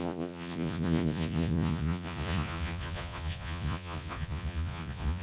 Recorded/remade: remade